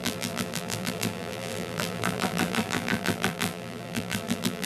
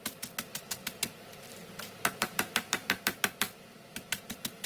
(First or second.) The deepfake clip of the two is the first